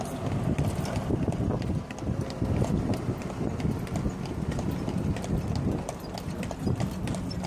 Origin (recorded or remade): recorded